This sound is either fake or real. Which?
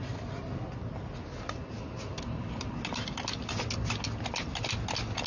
real